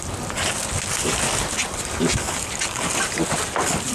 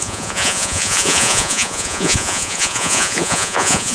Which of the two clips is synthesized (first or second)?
second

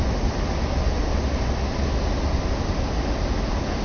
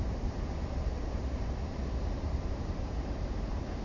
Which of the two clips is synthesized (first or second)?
second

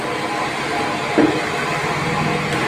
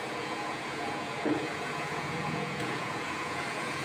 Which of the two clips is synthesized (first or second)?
second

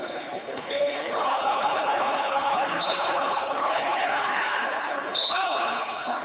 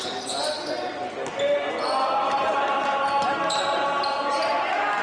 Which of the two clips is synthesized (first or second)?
first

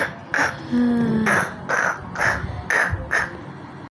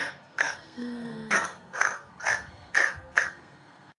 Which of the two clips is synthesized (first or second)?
second